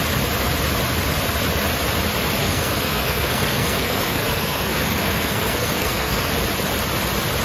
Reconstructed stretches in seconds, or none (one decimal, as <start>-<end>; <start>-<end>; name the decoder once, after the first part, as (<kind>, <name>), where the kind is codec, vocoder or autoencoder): 2.4-6.3 (codec, SNAC)